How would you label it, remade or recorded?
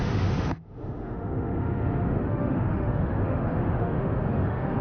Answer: remade